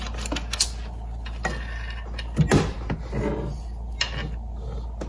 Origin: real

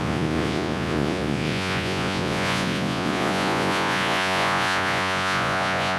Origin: fake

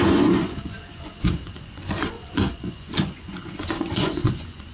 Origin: fake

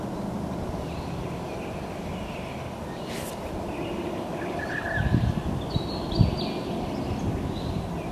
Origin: real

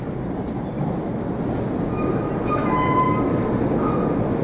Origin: real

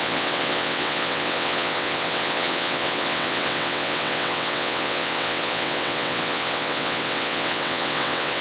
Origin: fake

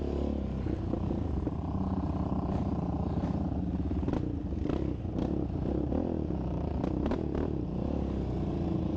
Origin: real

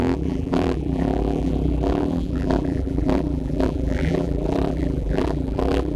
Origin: fake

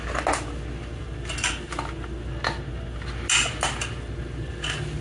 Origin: real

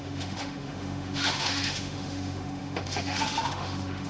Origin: fake